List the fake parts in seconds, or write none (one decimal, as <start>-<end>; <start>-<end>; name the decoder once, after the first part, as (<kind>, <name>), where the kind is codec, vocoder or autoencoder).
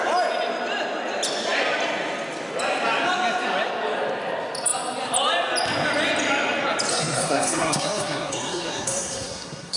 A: 6.9-9.8 (codec, SNAC)